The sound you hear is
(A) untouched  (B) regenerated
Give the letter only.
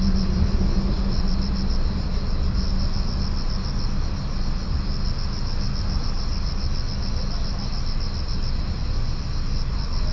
A